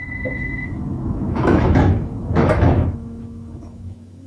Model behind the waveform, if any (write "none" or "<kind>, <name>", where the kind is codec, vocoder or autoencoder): autoencoder, DAC-VAE